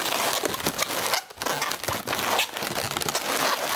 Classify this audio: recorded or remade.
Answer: recorded